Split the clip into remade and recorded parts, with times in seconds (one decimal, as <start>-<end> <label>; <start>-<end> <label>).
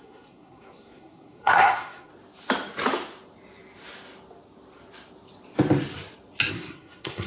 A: 0.0-2.1 remade; 2.1-6.5 recorded; 6.5-7.3 remade